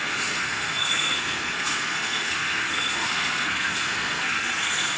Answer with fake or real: fake